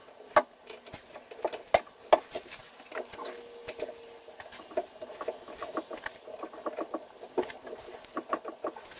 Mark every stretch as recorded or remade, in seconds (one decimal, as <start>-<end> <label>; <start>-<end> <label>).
0.0-9.0 recorded